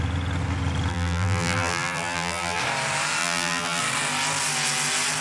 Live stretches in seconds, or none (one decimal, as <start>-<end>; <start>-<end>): 0.0-0.9; 2.6-3.2; 3.8-5.2